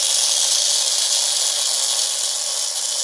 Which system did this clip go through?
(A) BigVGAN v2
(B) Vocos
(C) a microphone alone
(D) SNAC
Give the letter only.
C